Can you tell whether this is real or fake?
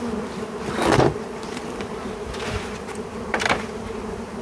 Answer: fake